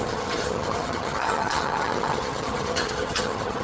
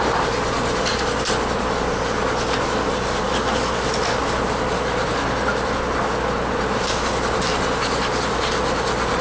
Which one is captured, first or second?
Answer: second